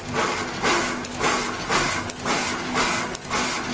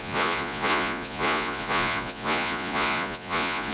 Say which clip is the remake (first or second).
second